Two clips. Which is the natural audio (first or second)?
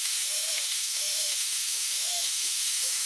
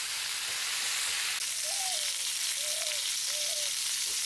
second